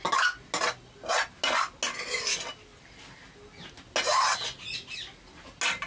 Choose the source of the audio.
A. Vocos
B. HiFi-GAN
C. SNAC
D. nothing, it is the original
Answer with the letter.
D